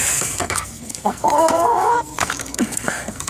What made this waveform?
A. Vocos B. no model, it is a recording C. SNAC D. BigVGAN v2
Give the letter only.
C